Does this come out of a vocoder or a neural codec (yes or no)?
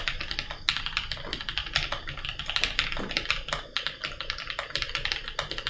no